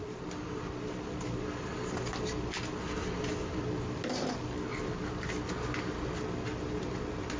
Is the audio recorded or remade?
recorded